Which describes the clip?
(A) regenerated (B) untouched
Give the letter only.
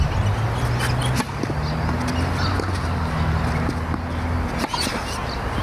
B